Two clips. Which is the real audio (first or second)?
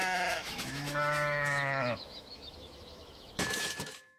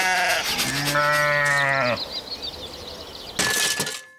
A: second